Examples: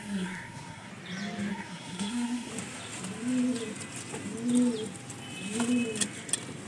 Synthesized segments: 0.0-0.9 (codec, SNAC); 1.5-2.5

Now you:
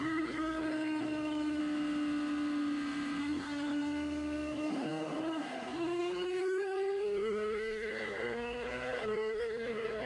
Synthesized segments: 0.0-1.6 (codec, SNAC); 3.2-10.1

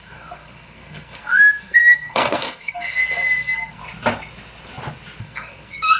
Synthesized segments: 0.0-3.8 (codec, SNAC); 5.2-6.0

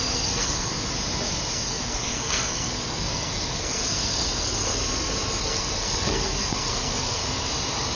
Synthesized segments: 0.0-0.7 (codec, SNAC); 1.5-4.8; 5.4-7.2

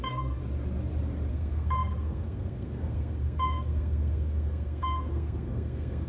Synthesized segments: 0.0-0.4 (codec, SNAC); 1.3-6.1

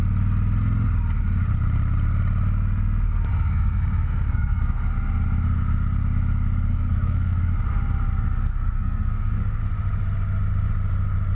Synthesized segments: 3.3-4.9 (codec, SNAC); 6.7-7.5; 8.5-9.6